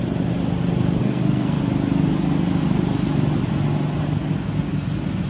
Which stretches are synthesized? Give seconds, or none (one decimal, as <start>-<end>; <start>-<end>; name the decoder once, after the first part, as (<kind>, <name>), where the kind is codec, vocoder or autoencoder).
1.0-1.6 (codec, SNAC)